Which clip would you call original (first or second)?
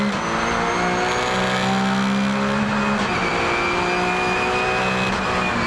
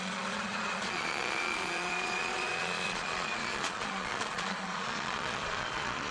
first